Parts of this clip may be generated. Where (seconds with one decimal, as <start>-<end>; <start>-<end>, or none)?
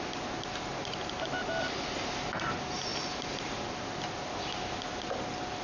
none